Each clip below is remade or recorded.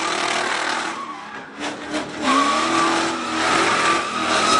recorded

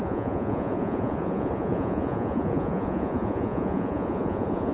remade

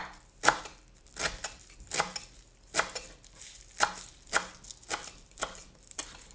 recorded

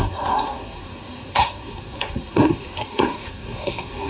remade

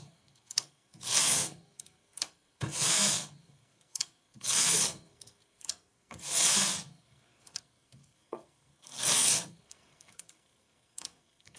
remade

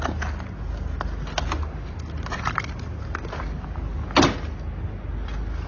recorded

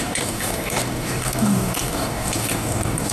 remade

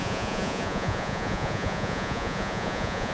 remade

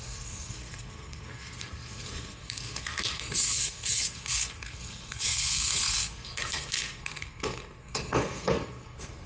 remade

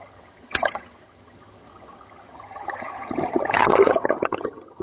remade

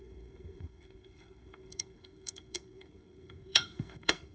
remade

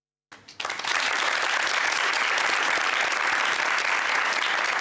recorded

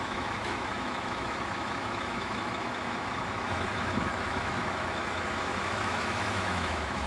remade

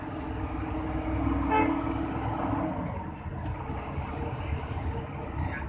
recorded